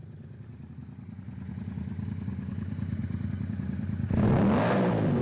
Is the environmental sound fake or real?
real